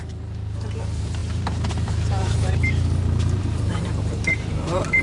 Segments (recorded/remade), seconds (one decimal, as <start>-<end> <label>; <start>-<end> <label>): 0.0-5.0 remade